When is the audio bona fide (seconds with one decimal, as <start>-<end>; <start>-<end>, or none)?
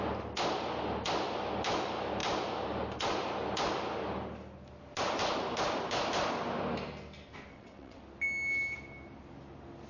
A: 0.0-7.5; 8.0-9.9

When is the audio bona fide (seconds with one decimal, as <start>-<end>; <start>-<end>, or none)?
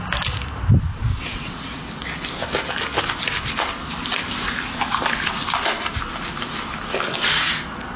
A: 0.0-0.9; 1.9-8.0